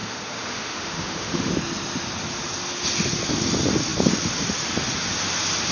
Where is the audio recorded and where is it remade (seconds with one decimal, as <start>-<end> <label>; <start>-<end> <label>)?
0.0-1.5 remade; 1.5-5.7 recorded